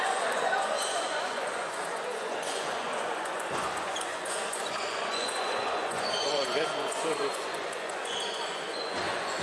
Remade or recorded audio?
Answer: remade